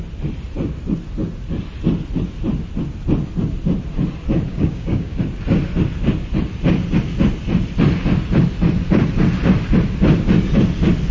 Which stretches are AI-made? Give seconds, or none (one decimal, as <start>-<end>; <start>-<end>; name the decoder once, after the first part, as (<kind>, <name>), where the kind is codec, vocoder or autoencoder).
4.5-5.2 (codec, DAC)